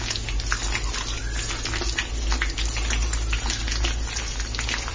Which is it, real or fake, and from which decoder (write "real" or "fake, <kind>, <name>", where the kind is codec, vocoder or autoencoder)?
real